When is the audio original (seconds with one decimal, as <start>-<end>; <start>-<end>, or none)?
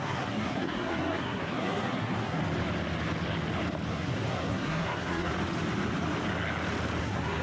2.4-3.9; 5.3-7.0